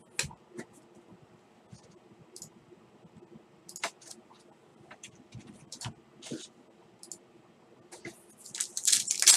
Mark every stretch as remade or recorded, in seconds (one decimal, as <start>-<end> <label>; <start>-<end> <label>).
0.0-4.7 recorded; 4.7-6.0 remade; 6.0-9.4 recorded